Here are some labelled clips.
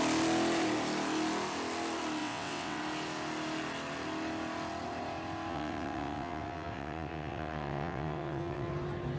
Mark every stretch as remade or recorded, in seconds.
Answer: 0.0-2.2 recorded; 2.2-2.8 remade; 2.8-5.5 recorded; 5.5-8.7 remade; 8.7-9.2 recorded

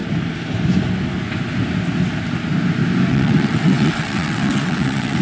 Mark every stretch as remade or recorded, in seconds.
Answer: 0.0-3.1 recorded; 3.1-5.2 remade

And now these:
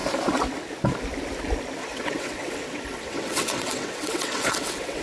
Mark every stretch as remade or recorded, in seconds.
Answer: 0.0-1.8 recorded; 1.8-5.0 remade

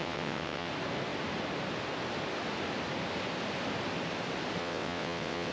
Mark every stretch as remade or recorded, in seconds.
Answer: 0.0-0.7 remade; 0.7-4.6 recorded; 4.6-5.5 remade

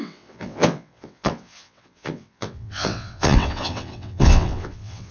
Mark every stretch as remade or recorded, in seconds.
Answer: 0.0-5.1 remade